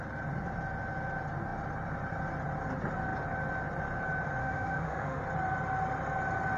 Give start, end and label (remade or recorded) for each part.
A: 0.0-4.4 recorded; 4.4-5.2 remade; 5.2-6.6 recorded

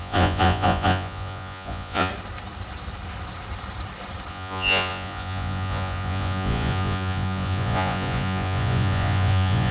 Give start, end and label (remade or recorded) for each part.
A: 0.0-2.1 remade; 2.1-4.3 recorded; 4.3-9.7 remade

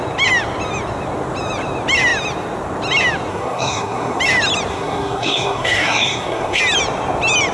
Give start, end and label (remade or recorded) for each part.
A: 0.0-3.3 recorded; 3.3-4.2 remade; 4.2-4.7 recorded; 4.7-6.6 remade; 6.6-7.5 recorded

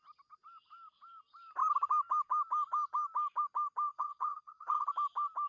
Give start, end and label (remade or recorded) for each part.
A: 0.0-3.9 recorded; 3.9-4.9 remade; 4.9-5.5 recorded

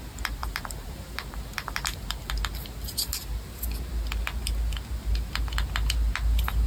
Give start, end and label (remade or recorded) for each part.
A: 0.0-0.4 recorded; 0.4-2.3 remade; 2.3-6.7 recorded

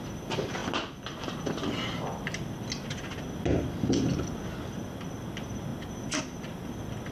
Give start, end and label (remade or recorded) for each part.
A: 0.0-7.1 recorded

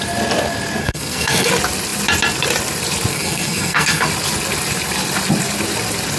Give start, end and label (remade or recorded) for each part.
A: 0.0-0.8 recorded; 0.8-1.5 remade; 1.5-3.1 recorded; 3.1-4.1 remade; 4.1-6.2 recorded

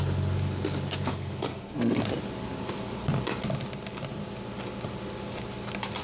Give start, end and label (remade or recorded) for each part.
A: 0.0-1.1 recorded; 1.1-2.0 remade; 2.0-6.0 recorded